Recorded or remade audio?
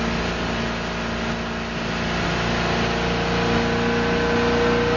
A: recorded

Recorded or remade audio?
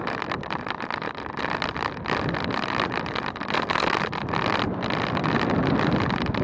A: recorded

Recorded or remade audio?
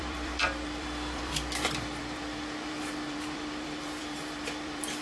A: remade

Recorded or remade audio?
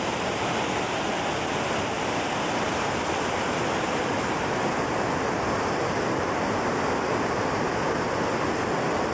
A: recorded